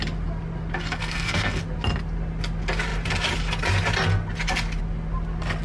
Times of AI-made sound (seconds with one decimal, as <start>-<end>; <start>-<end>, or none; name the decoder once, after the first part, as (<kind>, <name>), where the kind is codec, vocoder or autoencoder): 0.8-1.6 (codec, SNAC)